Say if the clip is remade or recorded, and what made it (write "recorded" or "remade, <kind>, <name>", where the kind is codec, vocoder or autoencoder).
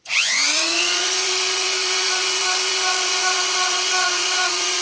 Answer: remade, vocoder, Vocos